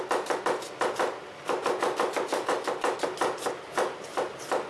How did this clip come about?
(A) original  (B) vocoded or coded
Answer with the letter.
A